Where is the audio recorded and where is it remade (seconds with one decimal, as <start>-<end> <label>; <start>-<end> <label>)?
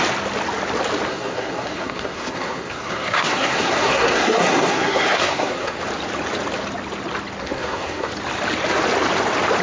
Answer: 0.0-1.1 recorded; 1.1-5.8 remade; 5.8-7.4 recorded; 7.4-8.1 remade; 8.1-9.6 recorded